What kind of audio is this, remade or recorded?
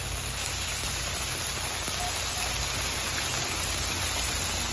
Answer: recorded